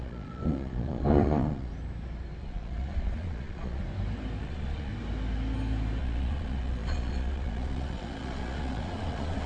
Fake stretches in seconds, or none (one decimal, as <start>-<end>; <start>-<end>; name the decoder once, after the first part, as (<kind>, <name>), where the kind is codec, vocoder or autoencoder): 0.0-1.7 (vocoder, Vocos); 2.4-3.8; 4.4-4.9; 6.0-9.5

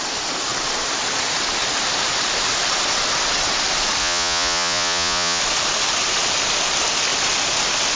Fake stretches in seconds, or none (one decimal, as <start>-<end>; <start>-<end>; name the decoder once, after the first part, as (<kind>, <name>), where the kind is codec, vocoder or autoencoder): 4.0-5.4 (vocoder, Vocos)

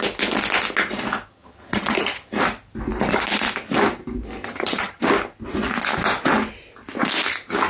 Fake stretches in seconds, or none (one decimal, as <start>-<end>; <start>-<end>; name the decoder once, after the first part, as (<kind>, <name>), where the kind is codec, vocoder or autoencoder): 1.3-2.3 (vocoder, HiFi-GAN); 4.4-5.0

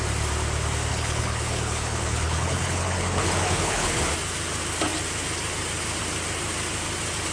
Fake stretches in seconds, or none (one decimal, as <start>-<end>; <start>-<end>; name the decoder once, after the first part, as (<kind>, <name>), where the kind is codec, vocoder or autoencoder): 0.9-4.0 (codec, HILCodec)

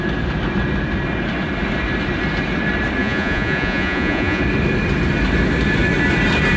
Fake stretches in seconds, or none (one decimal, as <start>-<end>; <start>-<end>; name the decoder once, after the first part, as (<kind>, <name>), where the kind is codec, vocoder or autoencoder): 3.0-4.4 (vocoder, Vocos)

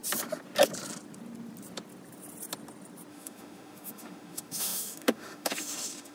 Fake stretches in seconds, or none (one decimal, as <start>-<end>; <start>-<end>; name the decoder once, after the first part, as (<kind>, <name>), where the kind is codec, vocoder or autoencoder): 3.1-6.1 (autoencoder, DAC-VAE)

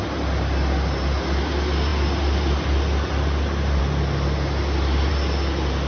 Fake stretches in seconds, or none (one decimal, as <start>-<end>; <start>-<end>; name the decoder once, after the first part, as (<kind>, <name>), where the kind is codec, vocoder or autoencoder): none

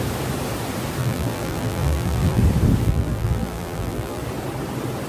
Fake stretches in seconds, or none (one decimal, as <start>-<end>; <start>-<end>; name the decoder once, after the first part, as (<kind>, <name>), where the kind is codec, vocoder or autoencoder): 1.0-2.4 (vocoder, BigVGAN v2); 2.8-4.2